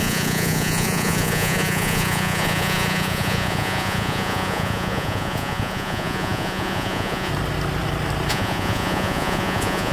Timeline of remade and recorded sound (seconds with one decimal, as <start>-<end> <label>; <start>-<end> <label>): 0.0-7.3 remade; 7.3-8.3 recorded; 8.3-9.9 remade